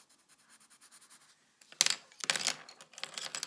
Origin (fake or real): real